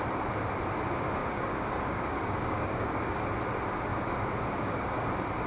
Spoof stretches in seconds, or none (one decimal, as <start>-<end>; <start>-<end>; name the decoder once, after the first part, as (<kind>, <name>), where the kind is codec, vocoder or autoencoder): 1.2-3.3 (codec, DAC); 3.9-5.1